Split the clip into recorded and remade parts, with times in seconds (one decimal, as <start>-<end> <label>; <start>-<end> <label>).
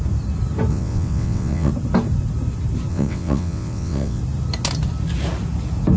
0.0-0.7 recorded; 0.7-1.7 remade; 1.7-2.9 recorded; 2.9-4.2 remade; 4.2-6.0 recorded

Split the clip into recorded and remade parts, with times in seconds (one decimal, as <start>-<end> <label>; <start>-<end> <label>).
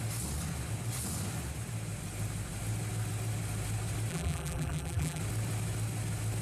0.0-4.1 recorded; 4.1-5.2 remade; 5.2-6.4 recorded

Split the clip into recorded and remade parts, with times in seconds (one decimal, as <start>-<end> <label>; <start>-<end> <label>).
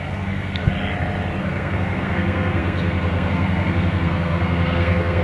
0.0-0.7 remade; 0.7-1.4 recorded; 1.4-5.2 remade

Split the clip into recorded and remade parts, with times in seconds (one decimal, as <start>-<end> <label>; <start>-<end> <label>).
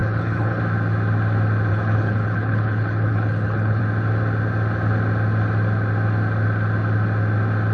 0.0-0.6 remade; 0.6-1.7 recorded; 1.7-3.8 remade; 3.8-7.7 recorded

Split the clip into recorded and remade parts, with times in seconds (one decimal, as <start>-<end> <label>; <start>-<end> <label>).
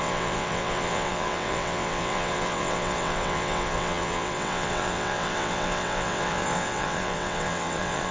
0.0-8.1 remade